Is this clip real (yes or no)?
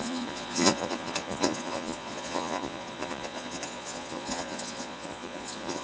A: no